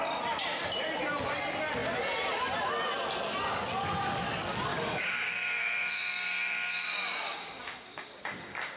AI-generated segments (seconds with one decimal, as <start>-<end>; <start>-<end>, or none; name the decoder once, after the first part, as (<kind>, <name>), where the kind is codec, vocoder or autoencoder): 4.7-8.8 (codec, DAC)